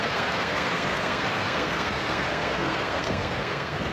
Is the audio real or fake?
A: fake